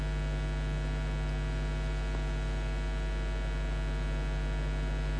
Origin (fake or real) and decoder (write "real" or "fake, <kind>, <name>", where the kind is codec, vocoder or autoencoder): real